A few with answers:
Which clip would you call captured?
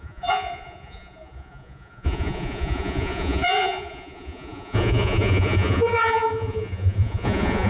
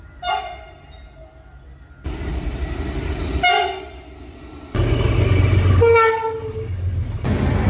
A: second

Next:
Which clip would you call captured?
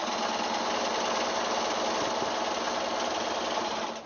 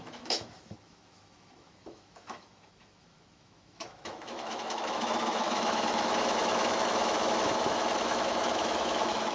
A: first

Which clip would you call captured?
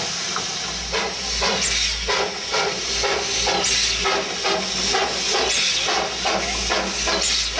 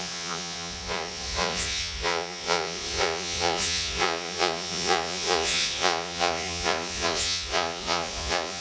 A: first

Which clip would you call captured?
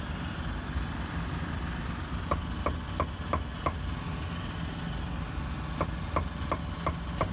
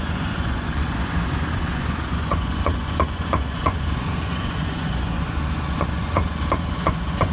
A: first